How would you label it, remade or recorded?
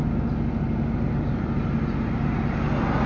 recorded